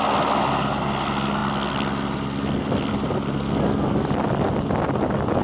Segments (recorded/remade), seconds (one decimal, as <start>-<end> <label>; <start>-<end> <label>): 0.0-5.4 recorded